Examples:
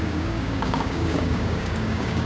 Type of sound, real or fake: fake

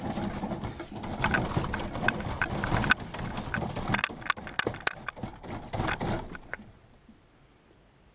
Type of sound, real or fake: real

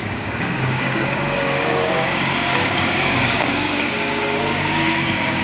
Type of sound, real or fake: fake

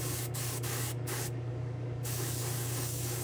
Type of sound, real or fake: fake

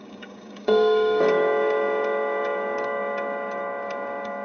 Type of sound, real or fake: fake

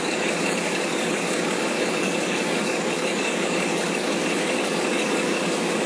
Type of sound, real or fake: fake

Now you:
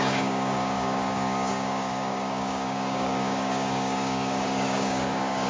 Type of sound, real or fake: fake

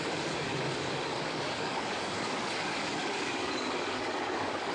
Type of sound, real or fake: fake